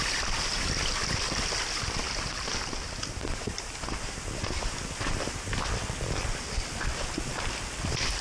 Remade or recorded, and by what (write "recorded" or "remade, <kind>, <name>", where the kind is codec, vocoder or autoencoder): recorded